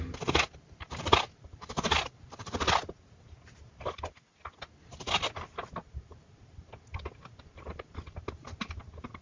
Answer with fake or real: real